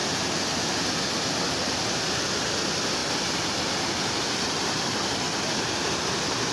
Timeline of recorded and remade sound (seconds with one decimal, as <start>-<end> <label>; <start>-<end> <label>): 0.0-6.5 recorded